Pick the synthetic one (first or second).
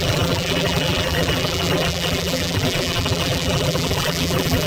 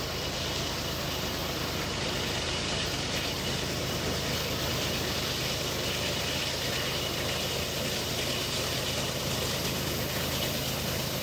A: first